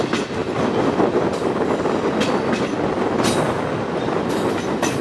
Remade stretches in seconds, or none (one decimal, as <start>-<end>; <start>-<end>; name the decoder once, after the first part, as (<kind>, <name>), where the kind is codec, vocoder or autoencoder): none